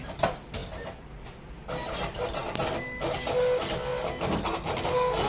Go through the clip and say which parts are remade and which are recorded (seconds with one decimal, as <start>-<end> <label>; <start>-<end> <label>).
0.0-5.3 recorded